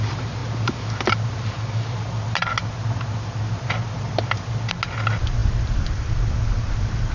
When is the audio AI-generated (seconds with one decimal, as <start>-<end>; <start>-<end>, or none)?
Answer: none